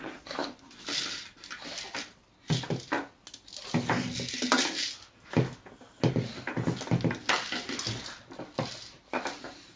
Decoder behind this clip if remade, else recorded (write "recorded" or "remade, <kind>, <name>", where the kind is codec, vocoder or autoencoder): recorded